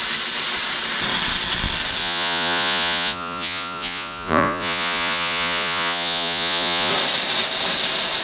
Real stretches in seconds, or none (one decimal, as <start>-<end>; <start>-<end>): 0.0-2.0; 6.9-8.2